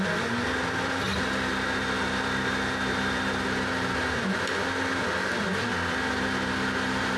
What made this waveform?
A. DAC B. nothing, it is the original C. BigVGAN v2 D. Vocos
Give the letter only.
B